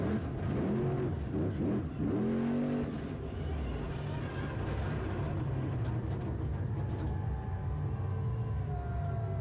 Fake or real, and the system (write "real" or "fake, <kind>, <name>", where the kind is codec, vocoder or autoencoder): real